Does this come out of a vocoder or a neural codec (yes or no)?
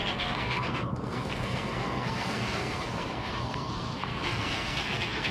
yes